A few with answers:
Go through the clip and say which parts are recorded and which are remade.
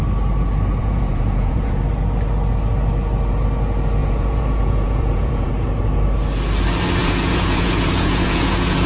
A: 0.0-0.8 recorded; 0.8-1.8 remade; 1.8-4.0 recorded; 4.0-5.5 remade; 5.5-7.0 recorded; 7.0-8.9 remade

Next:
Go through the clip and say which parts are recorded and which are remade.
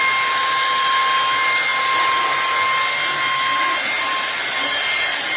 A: 0.0-5.4 recorded